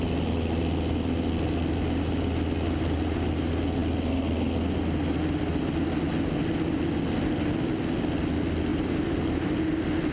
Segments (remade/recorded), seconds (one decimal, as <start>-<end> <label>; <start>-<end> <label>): 0.0-8.7 recorded; 8.7-9.4 remade; 9.4-10.1 recorded